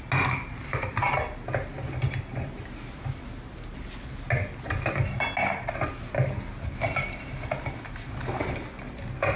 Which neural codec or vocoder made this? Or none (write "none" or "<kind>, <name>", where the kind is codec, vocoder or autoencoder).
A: none